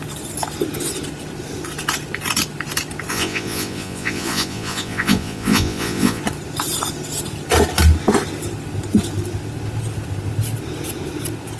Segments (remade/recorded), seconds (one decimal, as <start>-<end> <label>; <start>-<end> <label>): 0.0-3.1 recorded; 3.1-6.2 remade; 6.2-11.6 recorded